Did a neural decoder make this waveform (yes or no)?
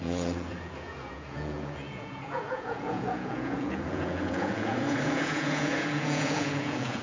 yes